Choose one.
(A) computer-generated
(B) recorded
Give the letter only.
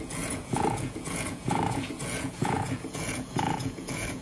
A